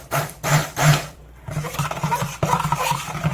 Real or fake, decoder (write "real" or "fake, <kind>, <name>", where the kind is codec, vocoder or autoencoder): fake, vocoder, BigVGAN v2